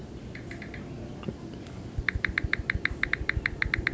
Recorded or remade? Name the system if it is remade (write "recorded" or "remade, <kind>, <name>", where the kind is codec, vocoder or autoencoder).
recorded